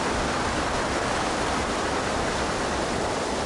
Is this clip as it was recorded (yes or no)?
yes